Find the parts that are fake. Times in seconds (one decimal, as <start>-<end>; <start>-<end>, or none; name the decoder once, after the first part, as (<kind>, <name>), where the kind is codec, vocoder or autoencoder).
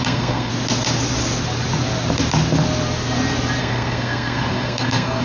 0.0-0.5 (codec, SNAC); 3.6-5.2